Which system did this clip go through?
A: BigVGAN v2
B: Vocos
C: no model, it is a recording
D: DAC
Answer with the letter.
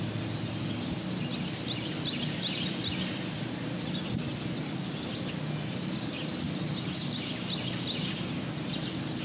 C